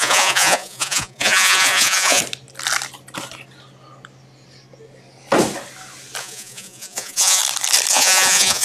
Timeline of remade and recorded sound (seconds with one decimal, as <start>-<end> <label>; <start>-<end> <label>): 0.0-2.2 remade; 2.2-6.2 recorded; 6.2-7.4 remade; 7.4-7.9 recorded; 7.9-8.6 remade